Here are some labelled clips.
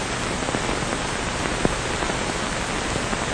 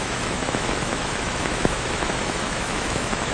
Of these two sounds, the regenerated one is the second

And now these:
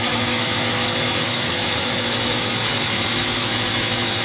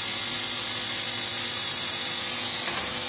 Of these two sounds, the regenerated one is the first